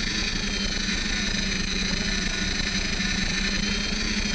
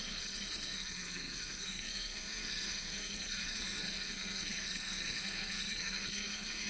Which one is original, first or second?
first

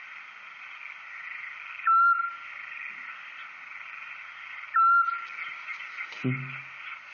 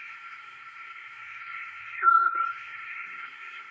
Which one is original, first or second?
first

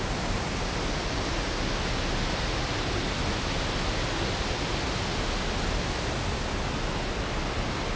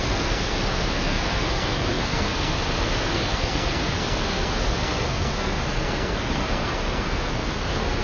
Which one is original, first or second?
first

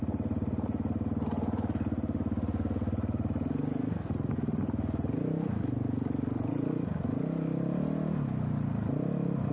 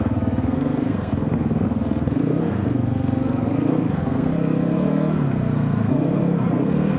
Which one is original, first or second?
first